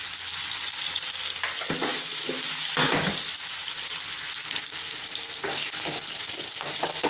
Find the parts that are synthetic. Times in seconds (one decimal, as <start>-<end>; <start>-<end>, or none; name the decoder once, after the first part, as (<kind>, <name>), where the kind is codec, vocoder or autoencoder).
1.9-3.1 (autoencoder, DAC-VAE)